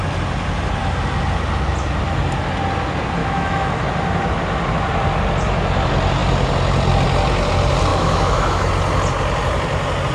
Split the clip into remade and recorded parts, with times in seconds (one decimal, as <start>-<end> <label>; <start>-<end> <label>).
0.0-3.2 recorded; 3.2-3.8 remade; 3.8-7.9 recorded; 7.9-8.7 remade; 8.7-10.1 recorded

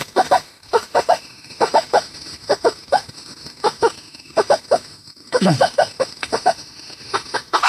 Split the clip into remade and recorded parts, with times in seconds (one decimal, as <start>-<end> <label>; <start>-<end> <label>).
0.0-7.7 remade